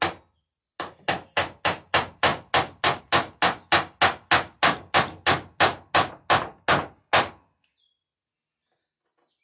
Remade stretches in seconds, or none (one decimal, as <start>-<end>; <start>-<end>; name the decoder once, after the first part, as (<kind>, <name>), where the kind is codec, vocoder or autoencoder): none